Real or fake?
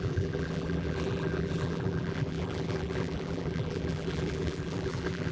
fake